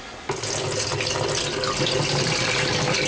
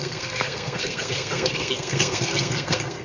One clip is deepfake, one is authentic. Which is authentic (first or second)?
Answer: first